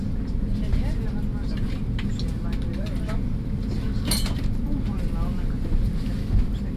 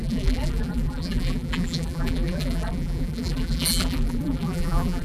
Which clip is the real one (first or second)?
first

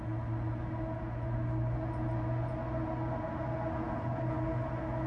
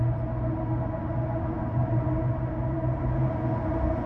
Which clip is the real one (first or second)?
first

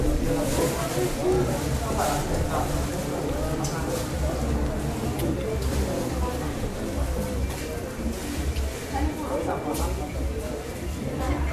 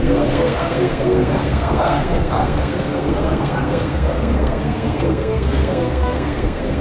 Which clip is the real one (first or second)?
first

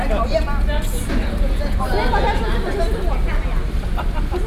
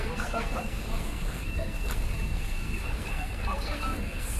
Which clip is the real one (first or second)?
first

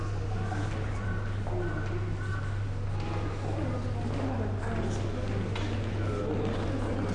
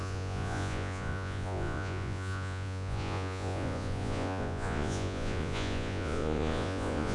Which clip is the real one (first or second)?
first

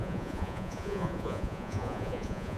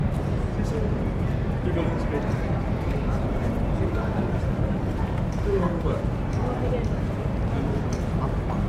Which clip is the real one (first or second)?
second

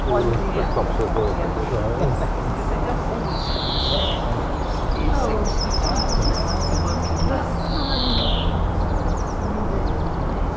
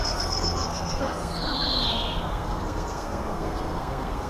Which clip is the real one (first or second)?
first